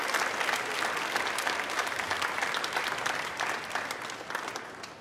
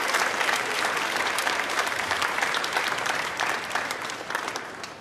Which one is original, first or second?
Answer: first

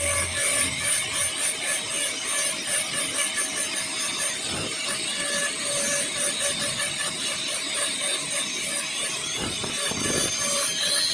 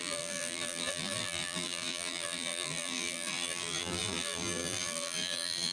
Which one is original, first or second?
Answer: first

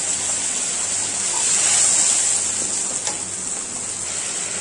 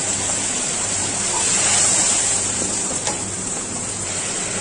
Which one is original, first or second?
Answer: first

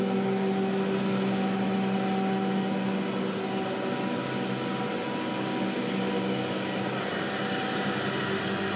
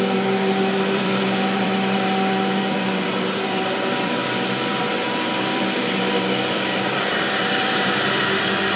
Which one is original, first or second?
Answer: first